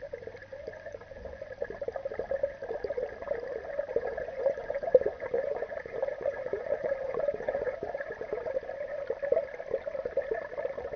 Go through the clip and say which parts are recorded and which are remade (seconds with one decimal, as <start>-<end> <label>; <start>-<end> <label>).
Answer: 0.0-0.5 recorded; 0.5-1.5 remade; 1.5-3.9 recorded; 3.9-8.4 remade; 8.4-11.0 recorded